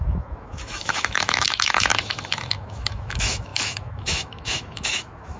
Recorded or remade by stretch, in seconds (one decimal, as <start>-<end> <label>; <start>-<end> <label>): 0.0-5.4 remade